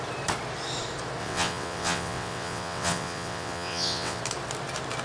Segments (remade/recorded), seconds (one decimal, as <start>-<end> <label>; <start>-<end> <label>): 0.0-1.2 recorded; 1.2-4.2 remade; 4.2-5.0 recorded